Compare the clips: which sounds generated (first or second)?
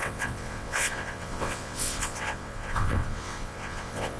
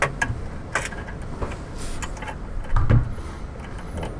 first